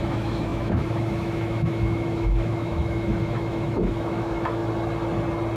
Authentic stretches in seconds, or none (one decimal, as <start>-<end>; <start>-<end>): 4.6-5.6